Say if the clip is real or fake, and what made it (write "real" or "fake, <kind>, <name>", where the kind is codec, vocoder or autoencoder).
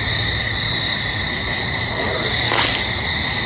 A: real